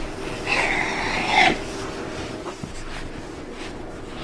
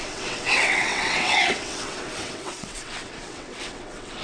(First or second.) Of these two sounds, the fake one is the second